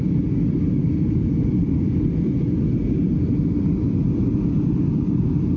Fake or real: real